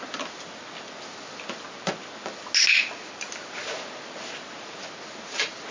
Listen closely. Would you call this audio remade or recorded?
recorded